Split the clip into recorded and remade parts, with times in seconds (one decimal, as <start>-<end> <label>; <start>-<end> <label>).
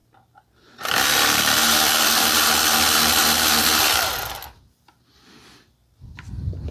0.0-6.7 recorded